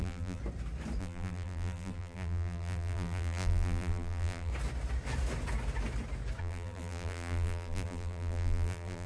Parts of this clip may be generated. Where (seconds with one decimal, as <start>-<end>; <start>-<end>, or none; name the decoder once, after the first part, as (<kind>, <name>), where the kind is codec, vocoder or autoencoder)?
0.0-0.4 (vocoder, BigVGAN v2); 1.0-4.5; 6.4-9.1